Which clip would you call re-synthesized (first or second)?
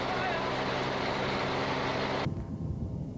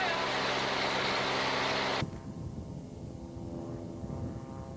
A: first